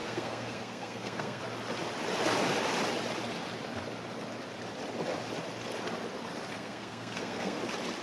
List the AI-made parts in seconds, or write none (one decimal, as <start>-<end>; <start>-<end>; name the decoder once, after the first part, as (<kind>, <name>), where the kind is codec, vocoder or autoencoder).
0.0-1.4 (codec, SNAC); 6.5-7.6